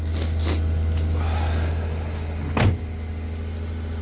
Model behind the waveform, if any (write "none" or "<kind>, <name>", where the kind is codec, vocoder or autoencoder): none